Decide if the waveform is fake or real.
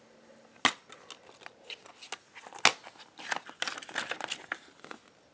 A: real